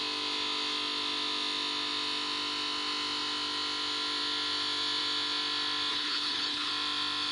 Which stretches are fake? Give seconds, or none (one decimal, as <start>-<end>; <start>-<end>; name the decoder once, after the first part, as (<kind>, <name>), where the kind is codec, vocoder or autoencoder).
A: 5.9-6.7 (codec, HILCodec)